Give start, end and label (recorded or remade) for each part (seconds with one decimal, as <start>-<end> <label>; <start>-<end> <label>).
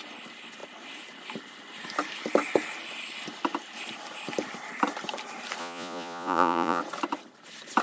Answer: 0.0-5.6 recorded; 5.6-6.8 remade; 6.8-7.8 recorded